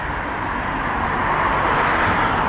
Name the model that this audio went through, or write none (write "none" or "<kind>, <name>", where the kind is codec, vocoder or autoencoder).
none